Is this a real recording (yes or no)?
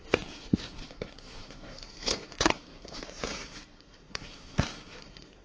no